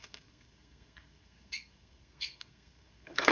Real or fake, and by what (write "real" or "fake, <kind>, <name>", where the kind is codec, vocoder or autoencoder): fake, codec, SNAC